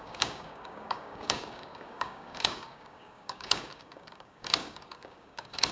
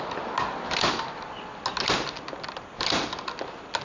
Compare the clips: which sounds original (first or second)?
second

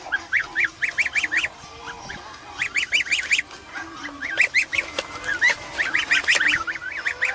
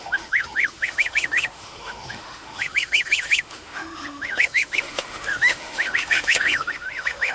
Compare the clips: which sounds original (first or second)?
first